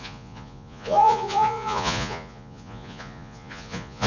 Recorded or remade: remade